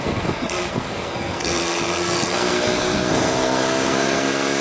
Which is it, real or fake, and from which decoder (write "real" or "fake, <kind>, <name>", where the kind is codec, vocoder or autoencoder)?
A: fake, codec, SNAC